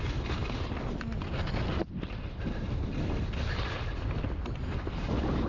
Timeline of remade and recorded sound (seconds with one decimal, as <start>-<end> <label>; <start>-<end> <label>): 0.0-5.5 recorded